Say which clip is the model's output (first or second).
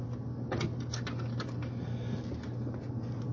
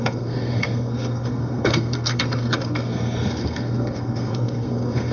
second